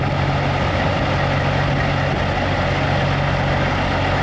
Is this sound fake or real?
real